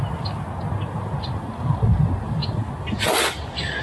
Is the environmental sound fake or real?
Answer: real